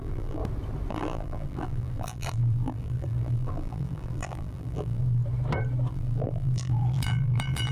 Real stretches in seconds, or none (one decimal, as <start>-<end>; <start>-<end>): 0.4-0.9; 5.2-5.9